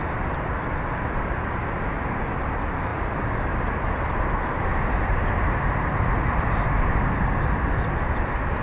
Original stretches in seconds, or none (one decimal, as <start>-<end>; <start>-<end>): 0.0-8.6